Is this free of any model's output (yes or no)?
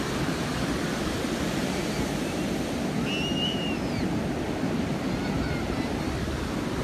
yes